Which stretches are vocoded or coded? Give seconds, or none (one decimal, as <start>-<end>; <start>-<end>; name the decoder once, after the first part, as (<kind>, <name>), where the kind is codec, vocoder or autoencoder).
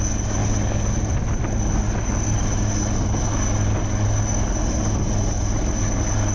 none